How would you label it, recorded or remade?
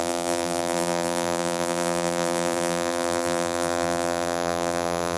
remade